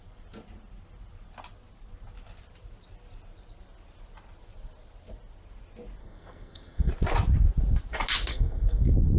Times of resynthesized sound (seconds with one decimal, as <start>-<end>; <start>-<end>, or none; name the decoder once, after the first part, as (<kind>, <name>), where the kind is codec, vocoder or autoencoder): 6.0-6.9 (codec, SNAC); 8.3-9.2